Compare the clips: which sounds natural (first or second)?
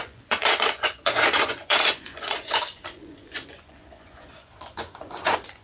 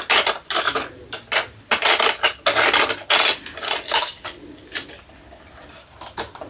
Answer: second